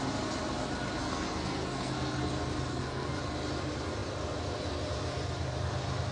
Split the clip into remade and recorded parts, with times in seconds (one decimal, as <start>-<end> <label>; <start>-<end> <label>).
0.0-1.0 recorded; 1.0-2.3 remade; 2.3-2.7 recorded; 2.7-3.2 remade; 3.2-6.1 recorded